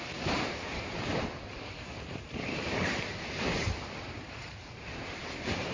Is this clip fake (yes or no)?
yes